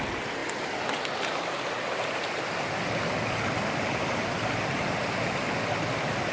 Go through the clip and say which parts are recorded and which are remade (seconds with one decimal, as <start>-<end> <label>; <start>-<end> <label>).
0.0-6.3 recorded